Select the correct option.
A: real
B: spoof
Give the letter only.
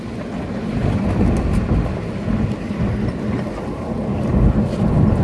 A